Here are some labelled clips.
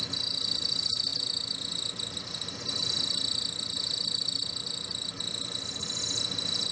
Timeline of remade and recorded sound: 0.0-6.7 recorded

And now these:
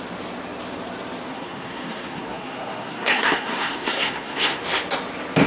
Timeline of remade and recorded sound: 0.0-1.3 recorded; 1.3-4.6 remade; 4.6-5.5 recorded

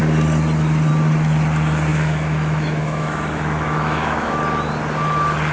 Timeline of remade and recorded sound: 0.0-1.9 recorded; 1.9-4.4 remade; 4.4-5.5 recorded

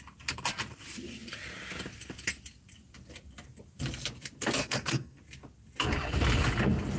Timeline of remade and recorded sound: 0.0-4.6 recorded; 4.6-5.2 remade; 5.2-7.0 recorded

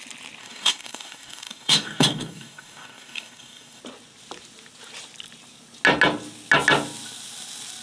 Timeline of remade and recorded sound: 0.0-0.4 recorded; 0.4-3.8 remade; 3.8-7.8 recorded

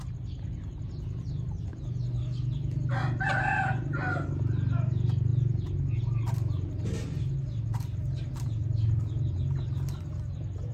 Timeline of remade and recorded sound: 0.0-10.7 recorded

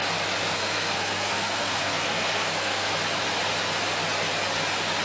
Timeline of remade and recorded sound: 0.0-0.4 recorded; 0.4-2.9 remade; 2.9-5.0 recorded